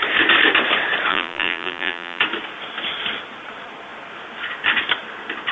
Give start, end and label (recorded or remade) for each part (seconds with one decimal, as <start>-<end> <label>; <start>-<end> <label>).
0.0-1.1 recorded; 1.1-2.2 remade; 2.2-5.5 recorded